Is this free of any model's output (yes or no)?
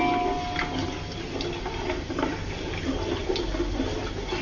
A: yes